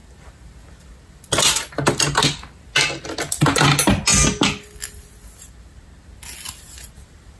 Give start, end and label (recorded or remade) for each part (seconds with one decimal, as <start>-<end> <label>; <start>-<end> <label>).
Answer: 0.0-7.4 recorded